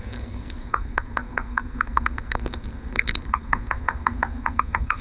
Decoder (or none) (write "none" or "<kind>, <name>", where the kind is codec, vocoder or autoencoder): codec, SNAC